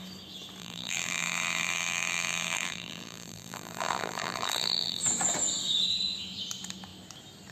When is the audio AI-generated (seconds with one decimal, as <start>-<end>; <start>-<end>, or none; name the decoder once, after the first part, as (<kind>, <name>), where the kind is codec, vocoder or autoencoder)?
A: 0.6-5.0 (vocoder, BigVGAN v2)